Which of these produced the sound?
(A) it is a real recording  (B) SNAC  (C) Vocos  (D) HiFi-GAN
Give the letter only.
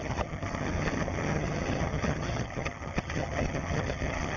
D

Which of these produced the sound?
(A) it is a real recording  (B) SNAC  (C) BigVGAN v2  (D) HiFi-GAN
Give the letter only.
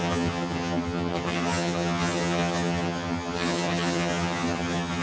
D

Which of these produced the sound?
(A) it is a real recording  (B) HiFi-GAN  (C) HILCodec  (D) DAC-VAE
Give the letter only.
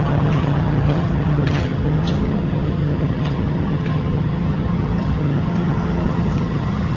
B